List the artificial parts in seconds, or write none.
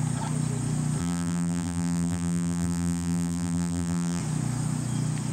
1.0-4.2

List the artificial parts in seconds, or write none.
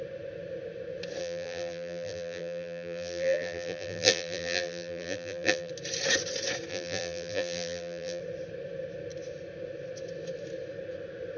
1.2-5.7; 6.7-8.2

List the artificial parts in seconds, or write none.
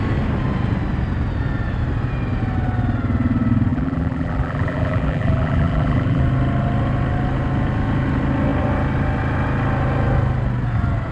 3.7-6.2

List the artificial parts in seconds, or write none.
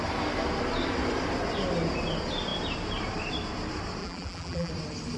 4.0-4.7